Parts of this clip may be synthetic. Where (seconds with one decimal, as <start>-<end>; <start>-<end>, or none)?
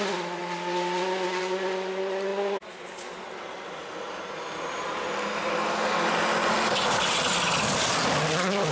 none